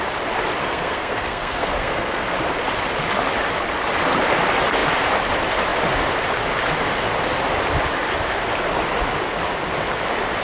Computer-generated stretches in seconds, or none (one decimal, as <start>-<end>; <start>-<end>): 0.6-2.2